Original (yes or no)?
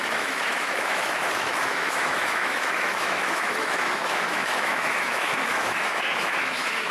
no